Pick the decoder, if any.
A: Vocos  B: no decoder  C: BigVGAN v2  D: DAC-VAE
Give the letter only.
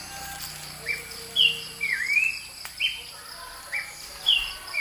B